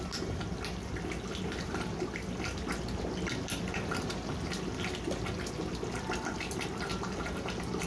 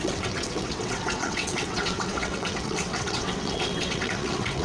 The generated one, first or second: second